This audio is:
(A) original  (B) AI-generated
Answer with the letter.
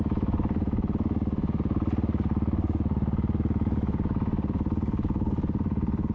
A